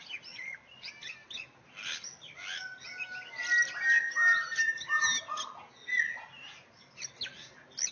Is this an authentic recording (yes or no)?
yes